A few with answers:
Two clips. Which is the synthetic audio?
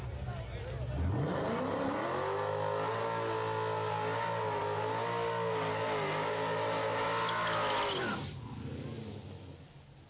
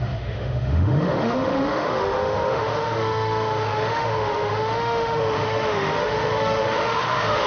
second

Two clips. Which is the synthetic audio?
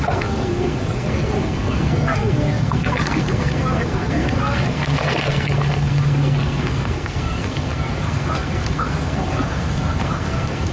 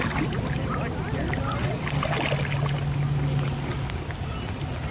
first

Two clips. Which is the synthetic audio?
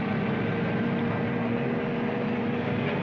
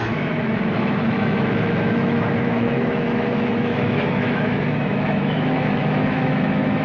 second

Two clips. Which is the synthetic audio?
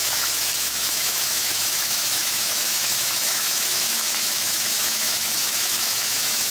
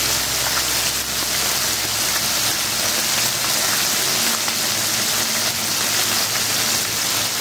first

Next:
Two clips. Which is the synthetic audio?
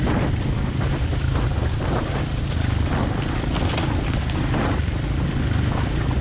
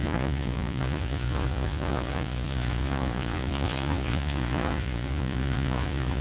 second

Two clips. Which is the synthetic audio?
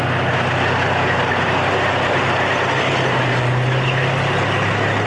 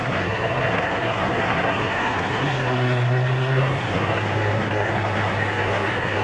second